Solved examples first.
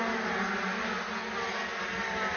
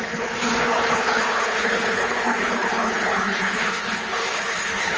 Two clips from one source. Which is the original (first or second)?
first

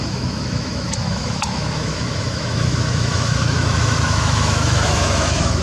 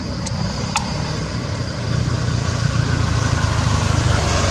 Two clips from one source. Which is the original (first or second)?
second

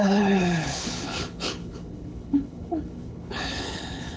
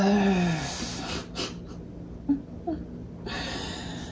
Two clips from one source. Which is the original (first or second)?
second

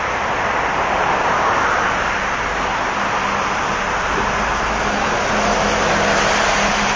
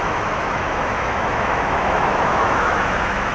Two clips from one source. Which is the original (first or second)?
first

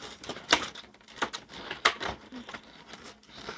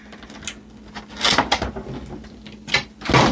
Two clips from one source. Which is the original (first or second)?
second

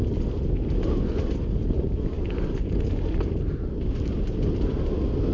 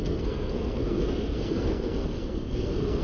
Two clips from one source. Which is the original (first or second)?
first